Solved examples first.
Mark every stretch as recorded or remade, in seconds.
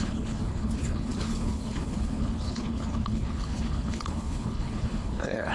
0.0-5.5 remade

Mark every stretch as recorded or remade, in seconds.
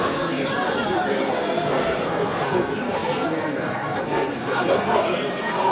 0.0-0.4 remade; 0.4-1.1 recorded; 1.1-5.7 remade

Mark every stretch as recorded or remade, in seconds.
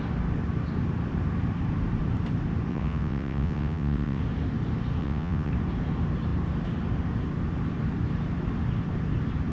0.0-2.7 recorded; 2.7-4.2 remade; 4.2-5.0 recorded; 5.0-5.5 remade; 5.5-9.5 recorded